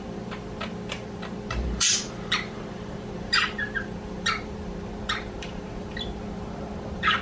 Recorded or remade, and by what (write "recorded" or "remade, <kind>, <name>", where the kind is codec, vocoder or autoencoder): remade, vocoder, BigVGAN v2